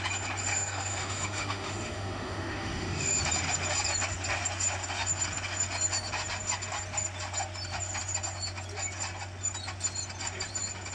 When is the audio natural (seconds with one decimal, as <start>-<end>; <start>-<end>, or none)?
0.0-0.5; 3.2-10.9